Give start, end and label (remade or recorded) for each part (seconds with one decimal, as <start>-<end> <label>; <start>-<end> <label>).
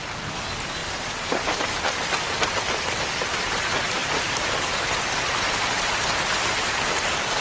0.0-7.4 recorded